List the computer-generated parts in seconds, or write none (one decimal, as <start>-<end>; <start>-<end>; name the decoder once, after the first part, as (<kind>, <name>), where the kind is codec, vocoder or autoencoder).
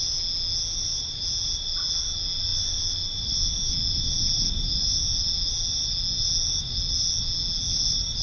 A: none